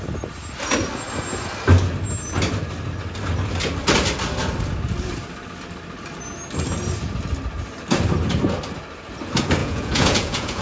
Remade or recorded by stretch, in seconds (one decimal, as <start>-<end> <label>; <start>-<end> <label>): 0.0-9.6 recorded; 9.6-10.6 remade